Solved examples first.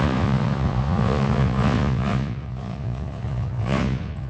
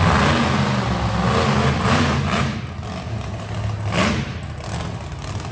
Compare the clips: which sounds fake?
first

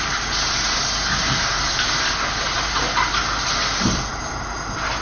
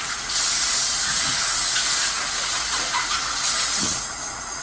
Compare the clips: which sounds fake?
second